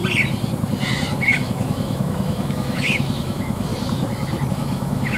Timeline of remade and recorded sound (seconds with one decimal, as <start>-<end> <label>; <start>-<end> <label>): 0.0-1.2 recorded; 1.2-3.7 remade; 3.7-4.5 recorded; 4.5-5.2 remade